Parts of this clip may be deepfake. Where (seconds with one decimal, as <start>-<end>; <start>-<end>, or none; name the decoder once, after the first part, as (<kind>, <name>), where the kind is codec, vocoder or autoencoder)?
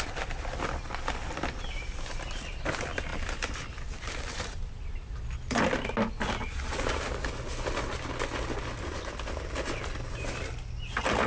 none